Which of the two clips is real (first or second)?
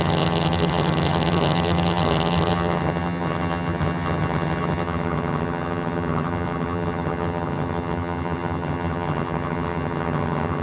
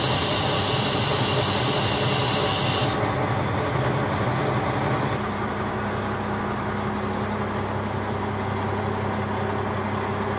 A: second